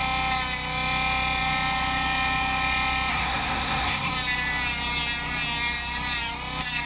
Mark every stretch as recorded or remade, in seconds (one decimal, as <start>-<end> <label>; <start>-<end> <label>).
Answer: 0.0-3.1 recorded; 3.1-4.1 remade; 4.1-6.9 recorded

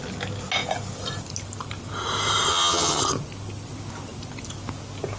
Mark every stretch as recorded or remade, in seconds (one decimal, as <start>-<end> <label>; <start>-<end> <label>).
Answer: 0.0-2.5 recorded; 2.5-3.0 remade; 3.0-5.2 recorded

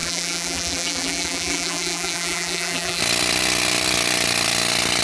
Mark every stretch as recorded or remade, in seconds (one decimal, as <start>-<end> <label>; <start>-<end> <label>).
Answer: 0.0-3.0 remade; 3.0-5.0 recorded

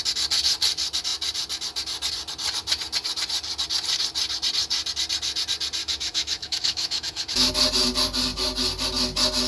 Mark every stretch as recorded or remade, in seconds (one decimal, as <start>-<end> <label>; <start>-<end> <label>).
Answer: 0.0-5.8 recorded; 5.8-7.5 remade; 7.5-9.5 recorded

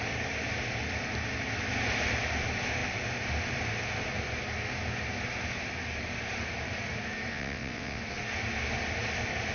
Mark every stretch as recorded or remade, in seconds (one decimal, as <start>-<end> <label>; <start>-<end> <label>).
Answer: 0.0-7.3 recorded; 7.3-8.0 remade; 8.0-9.5 recorded

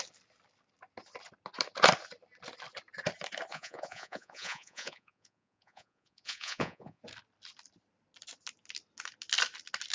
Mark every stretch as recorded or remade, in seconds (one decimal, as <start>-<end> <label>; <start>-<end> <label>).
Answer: 0.0-3.5 recorded; 3.5-7.0 remade; 7.0-9.9 recorded

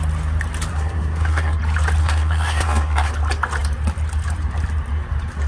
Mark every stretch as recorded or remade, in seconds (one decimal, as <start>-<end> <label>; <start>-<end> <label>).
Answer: 0.0-0.7 recorded; 0.7-1.6 remade; 1.6-2.0 recorded; 2.0-3.1 remade; 3.1-5.5 recorded

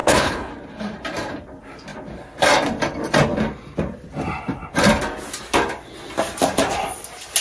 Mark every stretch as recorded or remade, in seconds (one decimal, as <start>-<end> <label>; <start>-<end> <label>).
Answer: 0.0-0.5 remade; 0.5-7.4 recorded